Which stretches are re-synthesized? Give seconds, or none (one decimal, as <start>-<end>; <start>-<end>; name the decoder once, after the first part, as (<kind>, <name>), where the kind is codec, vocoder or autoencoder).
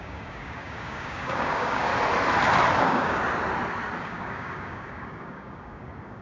0.0-1.9 (codec, DAC); 2.8-3.2; 4.0-6.2